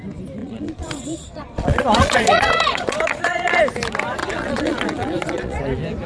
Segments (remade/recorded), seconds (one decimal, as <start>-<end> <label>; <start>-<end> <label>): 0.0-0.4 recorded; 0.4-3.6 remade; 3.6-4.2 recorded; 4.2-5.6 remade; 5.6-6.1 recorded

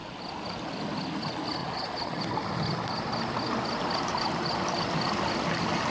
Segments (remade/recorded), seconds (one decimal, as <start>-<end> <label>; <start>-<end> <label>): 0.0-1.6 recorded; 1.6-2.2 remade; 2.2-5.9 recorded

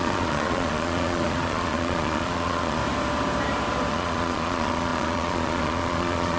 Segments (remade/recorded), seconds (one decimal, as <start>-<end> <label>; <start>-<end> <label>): 0.0-2.8 remade; 2.8-3.9 recorded; 3.9-6.4 remade

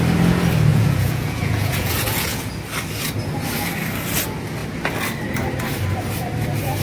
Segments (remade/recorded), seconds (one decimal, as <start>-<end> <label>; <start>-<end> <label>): 0.0-0.7 recorded; 0.7-2.5 remade; 2.5-6.8 recorded